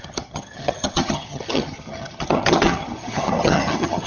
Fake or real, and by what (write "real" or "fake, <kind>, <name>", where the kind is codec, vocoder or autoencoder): fake, vocoder, HiFi-GAN